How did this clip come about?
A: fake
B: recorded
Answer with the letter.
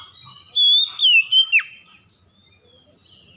B